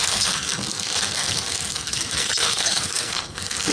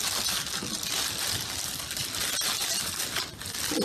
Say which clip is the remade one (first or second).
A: first